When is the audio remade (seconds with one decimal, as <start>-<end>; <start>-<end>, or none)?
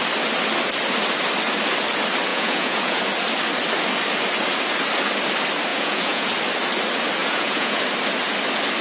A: 2.3-3.0; 5.7-6.3; 7.2-7.8